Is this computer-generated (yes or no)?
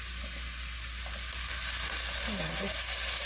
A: no